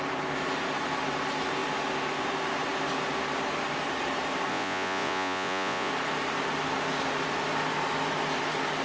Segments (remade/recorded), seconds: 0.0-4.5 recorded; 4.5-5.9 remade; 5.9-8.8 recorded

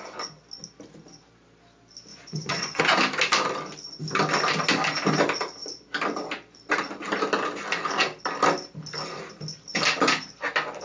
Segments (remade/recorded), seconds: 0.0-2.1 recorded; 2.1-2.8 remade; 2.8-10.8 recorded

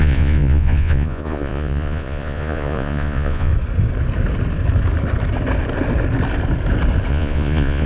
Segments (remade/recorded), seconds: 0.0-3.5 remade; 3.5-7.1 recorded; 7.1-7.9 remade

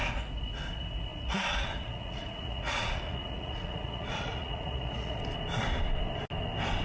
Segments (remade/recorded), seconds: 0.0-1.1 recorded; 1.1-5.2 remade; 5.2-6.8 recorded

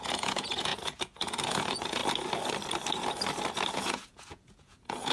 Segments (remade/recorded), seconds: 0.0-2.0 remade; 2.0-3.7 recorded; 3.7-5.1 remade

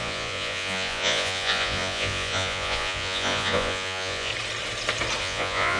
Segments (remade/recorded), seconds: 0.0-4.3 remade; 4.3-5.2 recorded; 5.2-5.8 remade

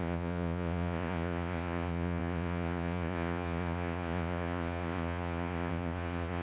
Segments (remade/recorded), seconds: 0.0-6.4 remade

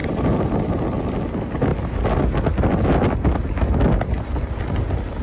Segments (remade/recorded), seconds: 0.0-5.2 recorded